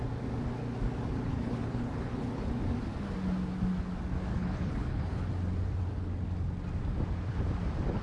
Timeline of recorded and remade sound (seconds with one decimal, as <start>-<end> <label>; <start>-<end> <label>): 0.0-1.3 recorded; 1.3-2.5 remade; 2.5-4.3 recorded; 4.3-5.3 remade; 5.3-8.0 recorded